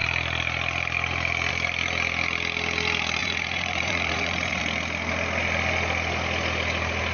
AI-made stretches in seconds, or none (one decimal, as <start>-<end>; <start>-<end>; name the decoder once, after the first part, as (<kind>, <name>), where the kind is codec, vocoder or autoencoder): 3.2-4.6 (vocoder, Vocos)

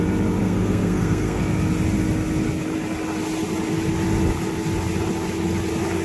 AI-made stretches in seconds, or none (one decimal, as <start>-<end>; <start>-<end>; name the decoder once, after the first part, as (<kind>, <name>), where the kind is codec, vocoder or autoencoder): 0.4-1.4 (codec, SNAC)

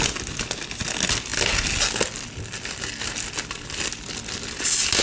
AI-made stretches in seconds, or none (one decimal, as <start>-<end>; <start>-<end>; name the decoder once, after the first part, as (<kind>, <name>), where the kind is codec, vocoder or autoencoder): none

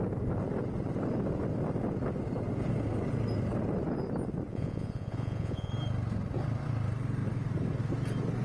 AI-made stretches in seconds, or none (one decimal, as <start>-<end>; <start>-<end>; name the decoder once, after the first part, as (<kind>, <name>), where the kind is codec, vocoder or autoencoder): 4.5-5.7 (vocoder, Vocos)